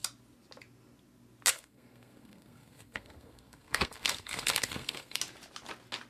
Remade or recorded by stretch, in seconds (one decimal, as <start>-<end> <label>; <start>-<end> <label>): 0.0-1.5 recorded; 1.5-5.2 remade; 5.2-6.1 recorded

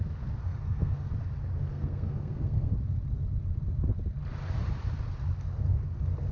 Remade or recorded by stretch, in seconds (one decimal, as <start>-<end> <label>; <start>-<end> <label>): 0.0-0.4 recorded; 0.4-1.1 remade; 1.1-1.7 recorded; 1.7-2.7 remade; 2.7-6.3 recorded

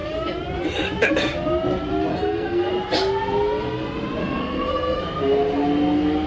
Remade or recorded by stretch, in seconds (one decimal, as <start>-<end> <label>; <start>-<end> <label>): 0.0-2.1 recorded; 2.1-2.7 remade; 2.7-4.2 recorded; 4.2-5.0 remade; 5.0-6.3 recorded

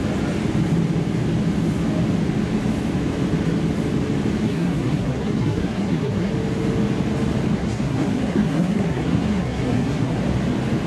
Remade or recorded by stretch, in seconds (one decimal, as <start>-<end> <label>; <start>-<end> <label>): 0.0-4.4 recorded; 4.4-6.3 remade; 6.3-7.6 recorded; 7.6-10.2 remade; 10.2-10.9 recorded

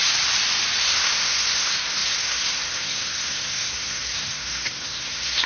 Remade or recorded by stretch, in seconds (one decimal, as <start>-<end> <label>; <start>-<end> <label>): 0.0-0.8 recorded; 0.8-5.5 remade

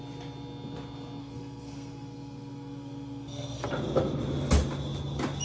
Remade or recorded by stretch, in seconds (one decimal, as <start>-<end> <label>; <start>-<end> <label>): 0.0-1.2 recorded; 1.2-3.7 remade; 3.7-5.4 recorded

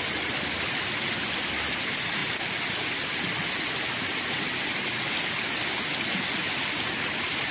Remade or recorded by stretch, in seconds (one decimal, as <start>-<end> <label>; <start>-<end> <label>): 0.0-7.5 recorded